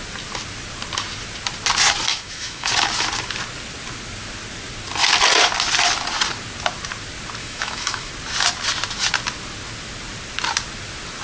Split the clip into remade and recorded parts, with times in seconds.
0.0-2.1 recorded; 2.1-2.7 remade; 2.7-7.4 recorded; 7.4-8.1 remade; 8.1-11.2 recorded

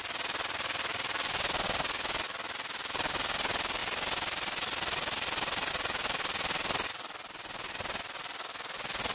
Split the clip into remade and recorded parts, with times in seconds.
0.0-9.1 recorded

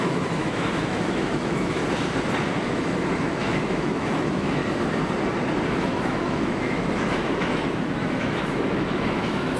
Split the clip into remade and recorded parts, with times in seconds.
0.0-1.8 remade; 1.8-2.6 recorded; 2.6-4.6 remade; 4.6-5.7 recorded; 5.7-9.6 remade

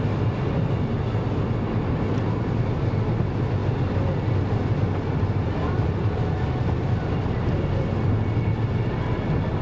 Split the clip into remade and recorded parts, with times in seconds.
0.0-9.6 recorded

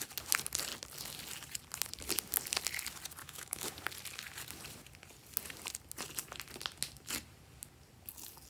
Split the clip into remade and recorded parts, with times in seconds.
0.0-3.2 recorded; 3.2-3.7 remade; 3.7-8.5 recorded

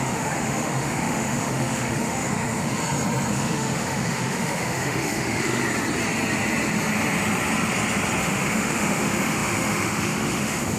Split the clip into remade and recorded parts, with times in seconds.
0.0-2.8 remade; 2.8-3.3 recorded; 3.3-5.6 remade; 5.6-8.2 recorded; 8.2-10.8 remade